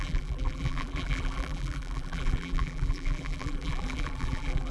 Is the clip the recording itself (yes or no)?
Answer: no